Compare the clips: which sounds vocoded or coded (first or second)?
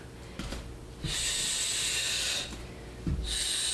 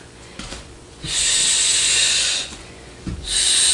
second